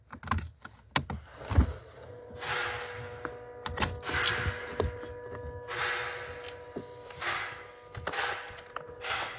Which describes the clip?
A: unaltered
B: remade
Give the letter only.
A